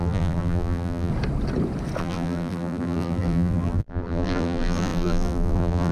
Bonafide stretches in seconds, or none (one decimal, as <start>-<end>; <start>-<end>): 1.1-2.0